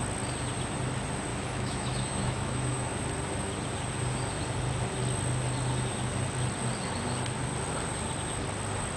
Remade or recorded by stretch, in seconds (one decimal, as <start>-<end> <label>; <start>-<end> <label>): 0.0-1.3 recorded; 1.3-2.9 remade; 2.9-9.0 recorded